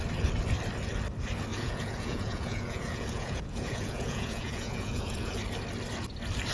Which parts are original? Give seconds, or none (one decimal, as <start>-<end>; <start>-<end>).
0.0-1.5; 5.4-6.5